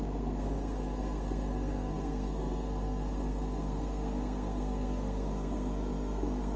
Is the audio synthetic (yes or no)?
yes